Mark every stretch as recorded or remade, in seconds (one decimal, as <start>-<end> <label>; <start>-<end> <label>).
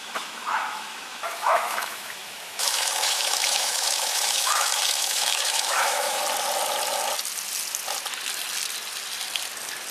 0.0-6.2 remade; 6.2-9.9 recorded